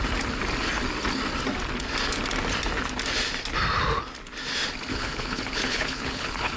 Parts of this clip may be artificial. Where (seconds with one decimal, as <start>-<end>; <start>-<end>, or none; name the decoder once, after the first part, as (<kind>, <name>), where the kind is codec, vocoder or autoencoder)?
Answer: 4.9-6.6 (codec, HILCodec)